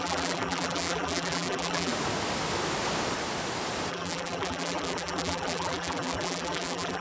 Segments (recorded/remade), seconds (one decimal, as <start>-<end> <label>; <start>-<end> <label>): 0.0-1.9 remade; 1.9-3.9 recorded; 3.9-7.0 remade